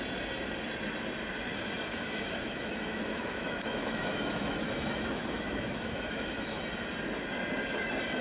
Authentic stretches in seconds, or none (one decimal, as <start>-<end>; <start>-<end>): 0.0-1.9; 6.6-8.2